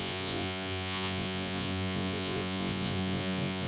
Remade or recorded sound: remade